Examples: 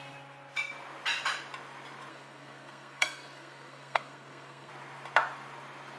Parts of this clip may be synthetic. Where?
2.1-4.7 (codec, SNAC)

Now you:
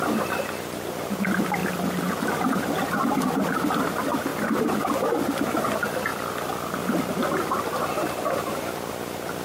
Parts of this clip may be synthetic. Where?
4.3-4.8 (vocoder, BigVGAN v2)

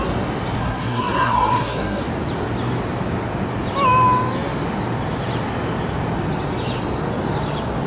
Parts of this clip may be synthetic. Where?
0.6-2.0 (codec, SNAC)